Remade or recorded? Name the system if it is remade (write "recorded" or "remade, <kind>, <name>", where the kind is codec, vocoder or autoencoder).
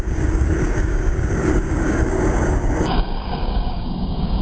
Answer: remade, codec, DAC